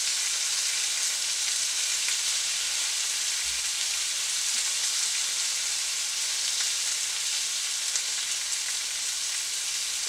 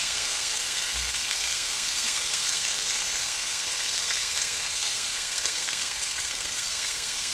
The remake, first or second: second